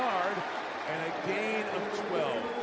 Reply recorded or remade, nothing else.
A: recorded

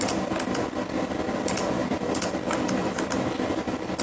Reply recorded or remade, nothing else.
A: recorded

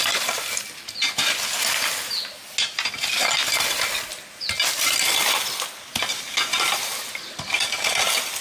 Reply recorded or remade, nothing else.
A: recorded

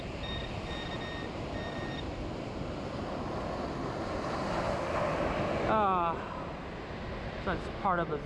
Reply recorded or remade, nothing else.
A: recorded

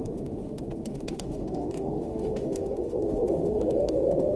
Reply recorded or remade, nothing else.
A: remade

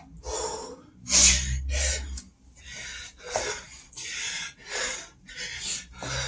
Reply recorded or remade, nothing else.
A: recorded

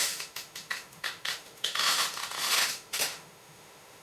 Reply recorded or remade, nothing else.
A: remade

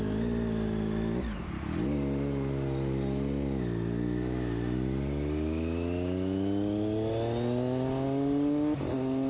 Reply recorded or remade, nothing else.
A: recorded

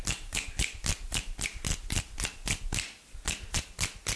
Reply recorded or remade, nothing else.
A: recorded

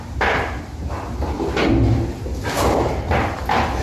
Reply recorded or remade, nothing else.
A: recorded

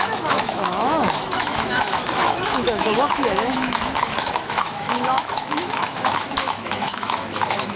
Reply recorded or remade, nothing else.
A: remade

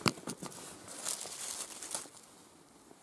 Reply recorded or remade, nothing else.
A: recorded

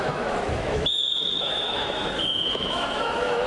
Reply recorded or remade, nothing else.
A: remade